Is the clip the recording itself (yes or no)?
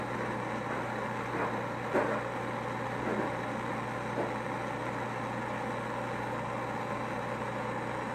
yes